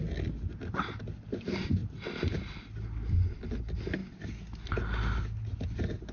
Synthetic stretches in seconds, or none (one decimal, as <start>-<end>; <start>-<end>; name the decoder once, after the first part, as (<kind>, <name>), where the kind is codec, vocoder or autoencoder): none